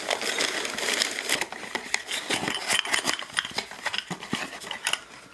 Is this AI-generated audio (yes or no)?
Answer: no